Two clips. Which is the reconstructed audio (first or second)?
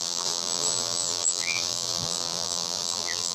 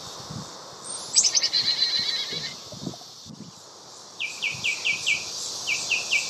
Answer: first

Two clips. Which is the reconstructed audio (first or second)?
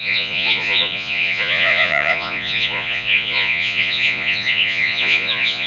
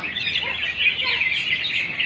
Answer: first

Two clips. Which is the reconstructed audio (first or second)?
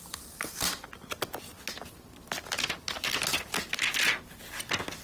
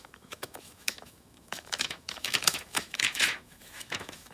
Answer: second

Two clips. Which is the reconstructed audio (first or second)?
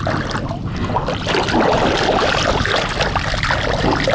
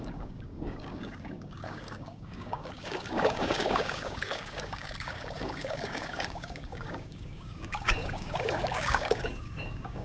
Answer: second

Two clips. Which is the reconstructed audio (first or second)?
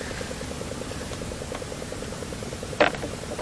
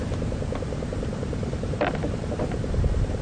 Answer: second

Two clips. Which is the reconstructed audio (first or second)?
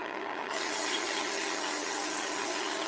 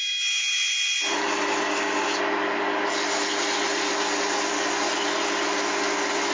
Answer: first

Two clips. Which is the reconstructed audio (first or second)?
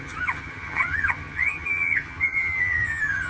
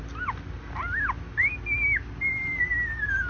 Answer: first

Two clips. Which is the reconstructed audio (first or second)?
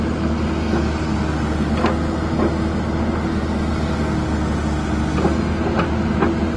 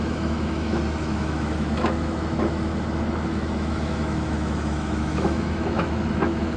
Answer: second